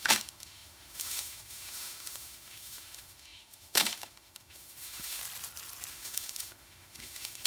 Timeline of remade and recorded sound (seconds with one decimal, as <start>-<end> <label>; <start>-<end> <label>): 0.0-5.2 remade; 5.2-5.9 recorded; 5.9-7.5 remade